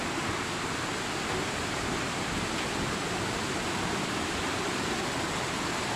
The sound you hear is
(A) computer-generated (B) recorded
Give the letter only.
A